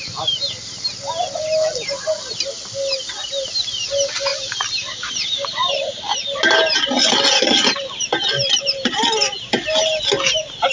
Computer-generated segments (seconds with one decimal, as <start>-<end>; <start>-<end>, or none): none